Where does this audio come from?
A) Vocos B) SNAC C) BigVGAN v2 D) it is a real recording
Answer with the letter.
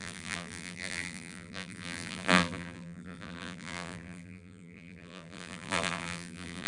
C